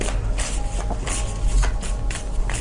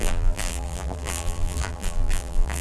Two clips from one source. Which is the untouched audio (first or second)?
first